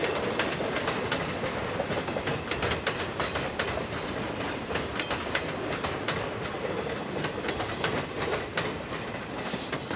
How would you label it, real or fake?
real